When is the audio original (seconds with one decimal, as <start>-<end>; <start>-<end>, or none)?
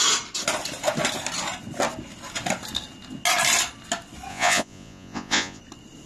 0.0-4.3; 5.6-6.1